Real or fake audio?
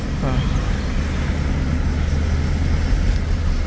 real